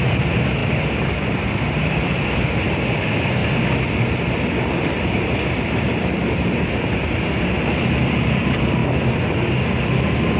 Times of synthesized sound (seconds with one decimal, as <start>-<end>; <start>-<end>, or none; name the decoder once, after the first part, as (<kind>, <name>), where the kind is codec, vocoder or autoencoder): 0.0-3.4 (vocoder, BigVGAN v2); 4.8-8.8